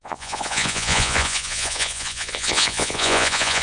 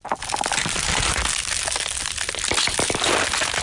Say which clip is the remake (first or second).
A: first